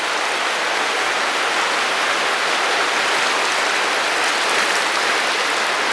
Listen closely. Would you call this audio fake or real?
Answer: real